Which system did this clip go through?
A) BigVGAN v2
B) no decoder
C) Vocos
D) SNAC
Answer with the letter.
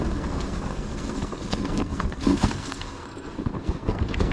D